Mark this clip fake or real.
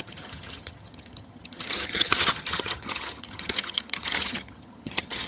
fake